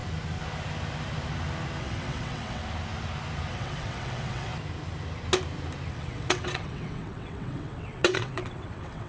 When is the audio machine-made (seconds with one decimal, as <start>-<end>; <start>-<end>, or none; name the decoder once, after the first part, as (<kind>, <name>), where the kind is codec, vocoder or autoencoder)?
1.8-2.6 (vocoder, WaveNeXt); 3.5-4.5; 5.9-9.1